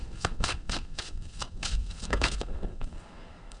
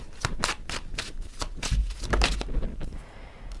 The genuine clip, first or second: second